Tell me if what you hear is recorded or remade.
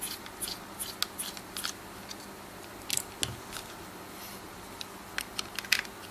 recorded